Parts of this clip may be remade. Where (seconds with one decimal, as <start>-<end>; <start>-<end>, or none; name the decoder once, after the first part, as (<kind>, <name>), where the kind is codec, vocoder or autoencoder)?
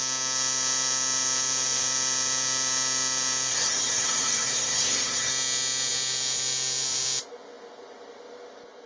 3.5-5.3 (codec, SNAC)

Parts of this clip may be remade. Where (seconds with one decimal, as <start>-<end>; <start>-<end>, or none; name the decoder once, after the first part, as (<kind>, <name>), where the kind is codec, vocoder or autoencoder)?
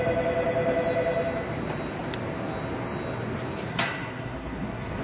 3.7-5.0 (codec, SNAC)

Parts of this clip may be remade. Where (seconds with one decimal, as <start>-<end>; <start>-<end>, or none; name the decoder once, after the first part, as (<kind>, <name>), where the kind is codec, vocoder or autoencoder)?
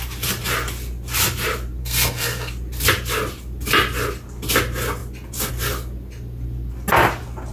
1.8-2.5 (codec, SNAC)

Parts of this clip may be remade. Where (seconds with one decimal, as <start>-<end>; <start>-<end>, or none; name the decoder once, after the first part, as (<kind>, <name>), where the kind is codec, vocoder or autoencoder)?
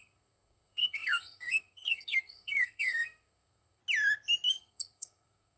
0.0-3.8 (codec, SNAC); 4.5-5.6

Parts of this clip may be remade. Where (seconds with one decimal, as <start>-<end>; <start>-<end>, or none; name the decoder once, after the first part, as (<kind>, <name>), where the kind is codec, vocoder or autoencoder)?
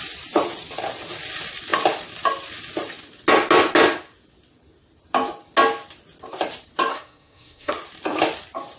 6.9-7.7 (codec, SNAC)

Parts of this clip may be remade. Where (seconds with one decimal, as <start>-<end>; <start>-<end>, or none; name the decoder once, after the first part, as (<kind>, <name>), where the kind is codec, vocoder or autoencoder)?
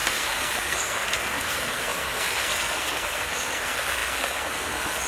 0.0-5.1 (codec, SNAC)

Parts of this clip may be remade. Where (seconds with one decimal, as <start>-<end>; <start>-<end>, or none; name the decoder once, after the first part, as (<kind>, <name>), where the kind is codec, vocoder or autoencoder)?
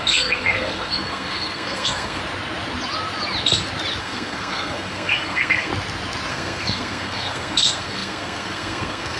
0.0-2.2 (codec, SNAC); 4.0-5.7; 6.3-9.2